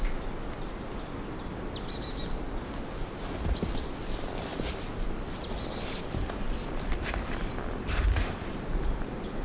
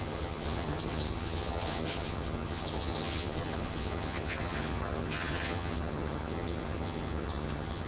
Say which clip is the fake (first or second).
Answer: second